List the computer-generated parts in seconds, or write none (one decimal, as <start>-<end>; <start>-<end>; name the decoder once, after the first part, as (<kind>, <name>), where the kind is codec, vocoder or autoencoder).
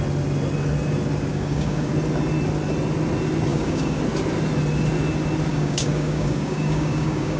1.3-1.9 (codec, DAC); 3.5-4.0; 5.5-7.4